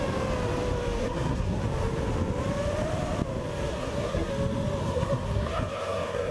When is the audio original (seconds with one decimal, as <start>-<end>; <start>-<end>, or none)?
0.0-1.0; 1.6-3.7; 4.3-4.8